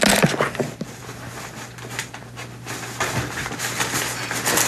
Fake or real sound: real